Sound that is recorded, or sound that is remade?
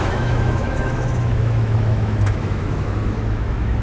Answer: remade